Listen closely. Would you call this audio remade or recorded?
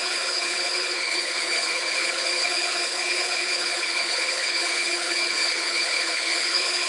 remade